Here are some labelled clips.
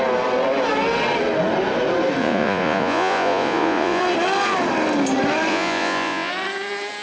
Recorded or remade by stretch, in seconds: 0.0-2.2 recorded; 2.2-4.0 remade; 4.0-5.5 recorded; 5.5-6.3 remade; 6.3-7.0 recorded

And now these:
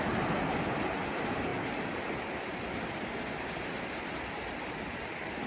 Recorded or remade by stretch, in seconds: 0.0-5.5 recorded

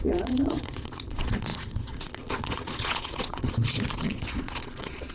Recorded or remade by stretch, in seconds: 0.0-5.1 remade

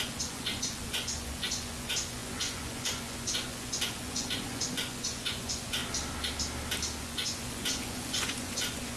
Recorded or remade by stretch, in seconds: 0.0-5.8 remade; 5.8-7.0 recorded; 7.0-9.0 remade

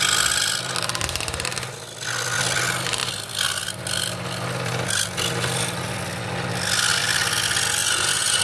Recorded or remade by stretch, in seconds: 0.0-7.8 recorded; 7.8-8.4 remade

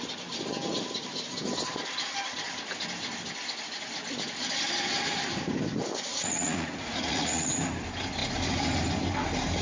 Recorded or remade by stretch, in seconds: 0.0-6.1 recorded; 6.1-7.5 remade; 7.5-9.6 recorded

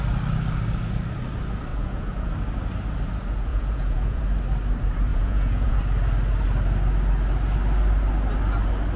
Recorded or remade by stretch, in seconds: 0.0-1.7 recorded; 1.7-2.3 remade; 2.3-3.5 recorded; 3.5-4.2 remade; 4.2-5.1 recorded; 5.1-5.8 remade; 5.8-9.0 recorded